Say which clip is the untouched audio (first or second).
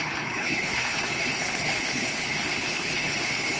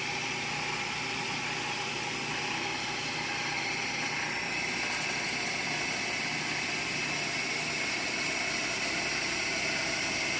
second